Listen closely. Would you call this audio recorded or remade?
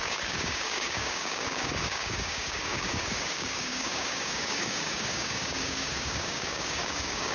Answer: remade